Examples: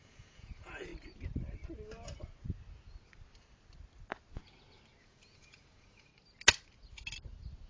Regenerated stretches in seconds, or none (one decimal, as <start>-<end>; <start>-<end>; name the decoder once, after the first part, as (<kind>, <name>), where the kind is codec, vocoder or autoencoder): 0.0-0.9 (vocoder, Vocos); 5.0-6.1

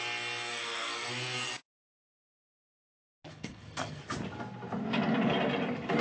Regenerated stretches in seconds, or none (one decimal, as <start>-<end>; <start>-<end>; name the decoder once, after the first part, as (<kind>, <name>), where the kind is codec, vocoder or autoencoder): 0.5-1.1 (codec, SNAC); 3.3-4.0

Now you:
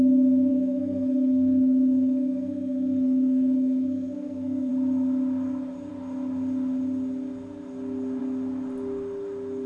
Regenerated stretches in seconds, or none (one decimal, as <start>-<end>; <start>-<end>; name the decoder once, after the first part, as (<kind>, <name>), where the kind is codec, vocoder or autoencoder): 0.5-4.7 (codec, SNAC)

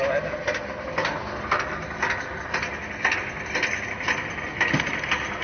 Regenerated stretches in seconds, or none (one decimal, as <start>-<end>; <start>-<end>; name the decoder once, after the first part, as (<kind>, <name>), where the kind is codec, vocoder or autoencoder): none